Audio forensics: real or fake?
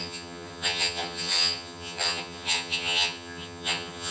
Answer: fake